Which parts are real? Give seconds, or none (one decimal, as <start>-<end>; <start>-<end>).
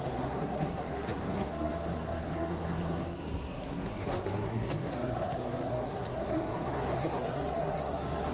none